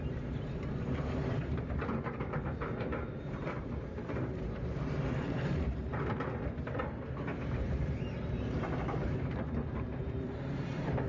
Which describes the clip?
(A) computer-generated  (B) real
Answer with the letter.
A